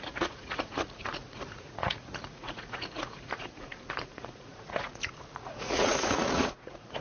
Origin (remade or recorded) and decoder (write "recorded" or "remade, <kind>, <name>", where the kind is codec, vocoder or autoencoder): remade, vocoder, Vocos